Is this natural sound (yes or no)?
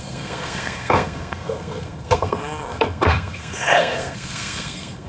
no